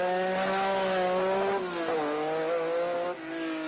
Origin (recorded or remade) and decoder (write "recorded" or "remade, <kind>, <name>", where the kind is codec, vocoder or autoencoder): recorded